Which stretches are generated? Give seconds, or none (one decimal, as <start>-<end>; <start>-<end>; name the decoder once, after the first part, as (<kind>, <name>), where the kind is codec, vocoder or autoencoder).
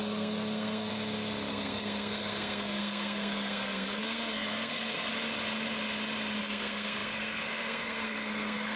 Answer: 0.0-0.9 (codec, SNAC); 1.5-5.1; 6.4-8.8